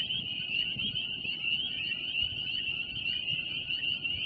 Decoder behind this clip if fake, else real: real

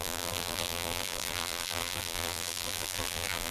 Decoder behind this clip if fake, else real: fake, vocoder, BigVGAN v2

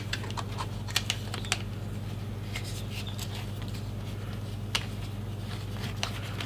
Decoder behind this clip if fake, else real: real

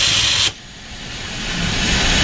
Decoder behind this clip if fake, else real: real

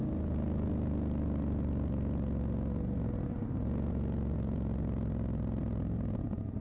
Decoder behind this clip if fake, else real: real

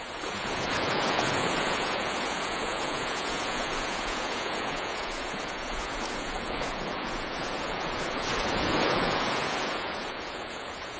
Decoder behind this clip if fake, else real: fake, vocoder, Vocos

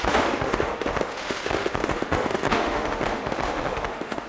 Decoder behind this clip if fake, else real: fake, autoencoder, DAC-VAE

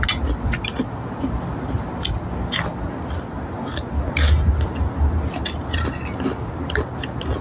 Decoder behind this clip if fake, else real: real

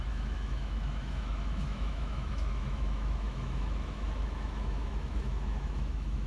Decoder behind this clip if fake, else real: fake, autoencoder, DAC-VAE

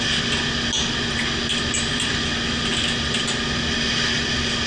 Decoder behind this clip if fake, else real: real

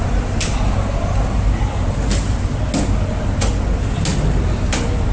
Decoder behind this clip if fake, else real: real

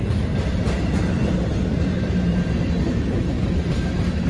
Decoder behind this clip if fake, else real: real